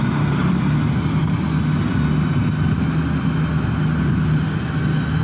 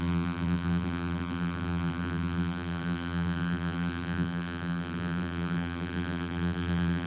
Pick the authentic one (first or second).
first